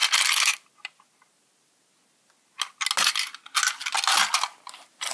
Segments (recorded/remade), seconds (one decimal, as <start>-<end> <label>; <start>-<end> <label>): 0.0-5.1 recorded